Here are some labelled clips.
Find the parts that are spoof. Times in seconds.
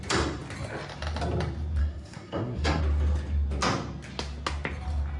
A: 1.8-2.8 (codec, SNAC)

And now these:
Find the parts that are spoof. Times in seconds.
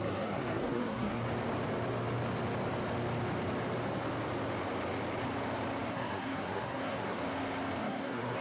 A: 0.0-1.2 (codec, SNAC); 5.9-7.2; 7.8-8.4